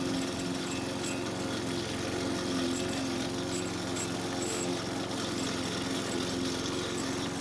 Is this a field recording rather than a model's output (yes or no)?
yes